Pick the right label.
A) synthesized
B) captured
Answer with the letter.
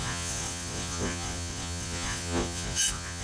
A